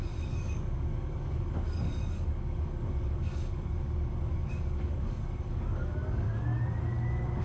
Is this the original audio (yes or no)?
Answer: no